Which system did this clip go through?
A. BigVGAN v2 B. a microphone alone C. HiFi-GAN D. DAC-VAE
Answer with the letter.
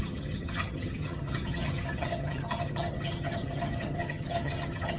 C